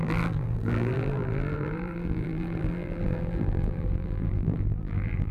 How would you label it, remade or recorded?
remade